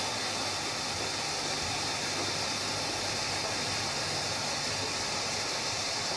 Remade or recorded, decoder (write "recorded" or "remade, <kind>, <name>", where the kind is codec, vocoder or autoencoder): recorded